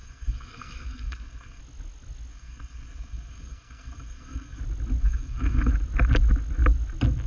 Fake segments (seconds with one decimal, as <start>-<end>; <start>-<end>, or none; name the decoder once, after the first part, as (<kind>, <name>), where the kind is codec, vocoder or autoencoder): 0.0-1.6 (codec, SNAC); 2.3-4.6; 5.0-5.7